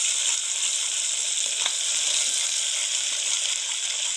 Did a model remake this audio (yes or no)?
no